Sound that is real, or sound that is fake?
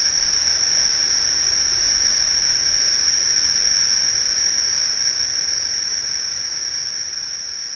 real